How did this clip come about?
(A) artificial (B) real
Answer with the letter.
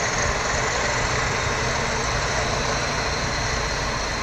B